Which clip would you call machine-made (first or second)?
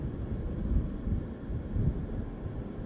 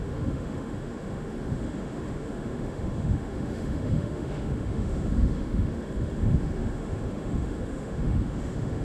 second